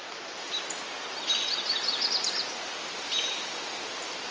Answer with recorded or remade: recorded